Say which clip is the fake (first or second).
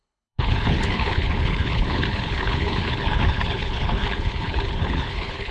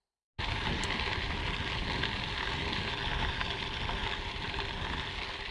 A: first